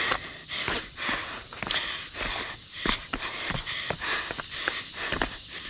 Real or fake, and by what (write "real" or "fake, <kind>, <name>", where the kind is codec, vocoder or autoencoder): real